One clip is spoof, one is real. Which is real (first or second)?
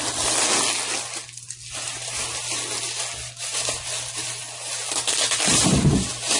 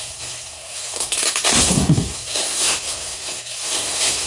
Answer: first